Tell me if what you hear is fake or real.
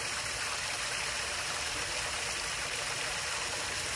real